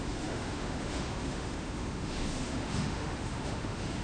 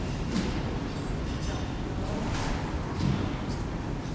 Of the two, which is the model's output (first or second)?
first